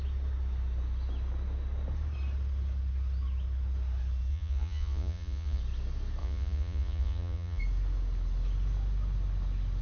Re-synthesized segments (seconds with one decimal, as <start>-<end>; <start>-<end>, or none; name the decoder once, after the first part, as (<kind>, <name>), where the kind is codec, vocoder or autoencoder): 4.3-5.6 (vocoder, Vocos); 6.2-7.6